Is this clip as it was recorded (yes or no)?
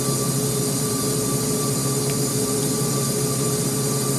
yes